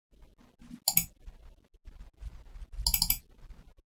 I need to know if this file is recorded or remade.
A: recorded